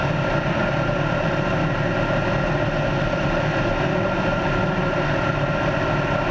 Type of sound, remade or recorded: recorded